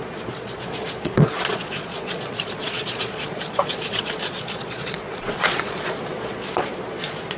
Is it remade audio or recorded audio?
remade